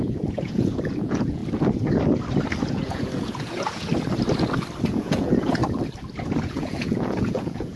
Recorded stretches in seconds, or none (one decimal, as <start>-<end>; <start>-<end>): 1.4-2.7; 3.9-4.9; 5.6-6.4